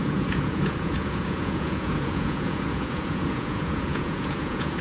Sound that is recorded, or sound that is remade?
remade